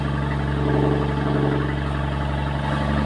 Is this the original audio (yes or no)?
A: yes